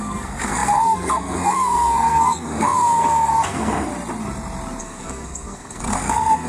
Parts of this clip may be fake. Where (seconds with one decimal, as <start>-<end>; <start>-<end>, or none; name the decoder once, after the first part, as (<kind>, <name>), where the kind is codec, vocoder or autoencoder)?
0.0-3.9 (codec, SNAC); 4.8-6.5